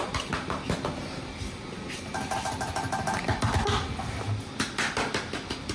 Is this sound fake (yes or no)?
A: no